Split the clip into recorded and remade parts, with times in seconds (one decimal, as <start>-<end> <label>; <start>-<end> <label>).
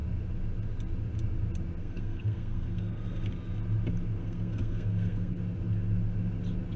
0.0-1.8 recorded; 1.8-3.3 remade; 3.3-4.2 recorded; 4.2-5.4 remade; 5.4-6.8 recorded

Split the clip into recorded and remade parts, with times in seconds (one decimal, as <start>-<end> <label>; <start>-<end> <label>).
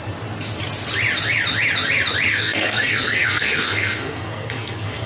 0.0-2.3 recorded; 2.3-5.1 remade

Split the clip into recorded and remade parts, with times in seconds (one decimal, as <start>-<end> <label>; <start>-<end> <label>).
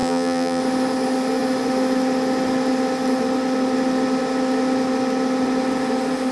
0.0-0.6 remade; 0.6-6.3 recorded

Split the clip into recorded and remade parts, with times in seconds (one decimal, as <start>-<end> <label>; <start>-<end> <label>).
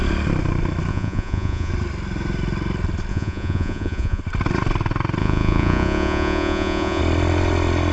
0.0-0.9 recorded; 0.9-1.7 remade; 1.7-3.1 recorded; 3.1-4.2 remade; 4.2-5.2 recorded; 5.2-7.0 remade; 7.0-7.9 recorded